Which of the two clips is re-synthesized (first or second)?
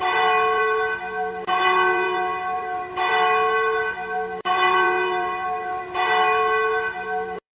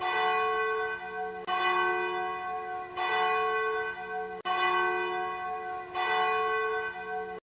first